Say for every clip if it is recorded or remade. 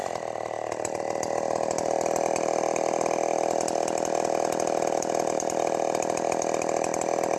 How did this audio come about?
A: recorded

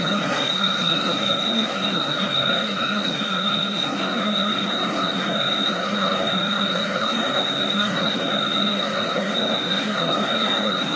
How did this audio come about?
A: remade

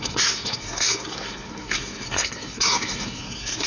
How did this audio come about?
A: remade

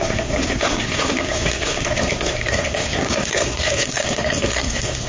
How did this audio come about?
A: remade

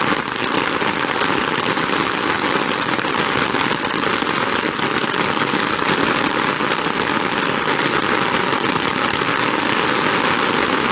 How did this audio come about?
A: recorded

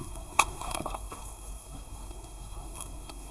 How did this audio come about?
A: remade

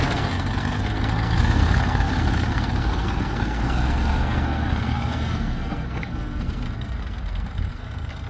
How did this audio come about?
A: remade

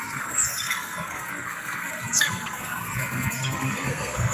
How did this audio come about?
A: remade